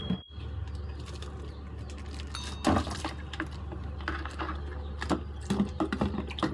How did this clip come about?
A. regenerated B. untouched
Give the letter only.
B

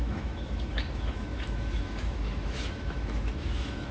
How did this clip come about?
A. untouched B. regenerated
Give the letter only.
B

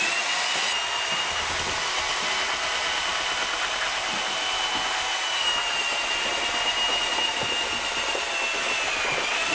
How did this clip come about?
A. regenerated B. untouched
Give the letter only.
B